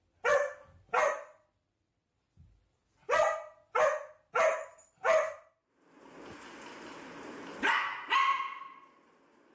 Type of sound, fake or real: real